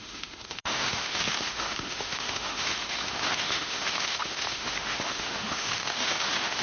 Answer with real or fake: fake